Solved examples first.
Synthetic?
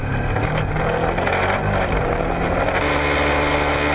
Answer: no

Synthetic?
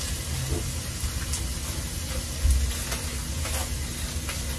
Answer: no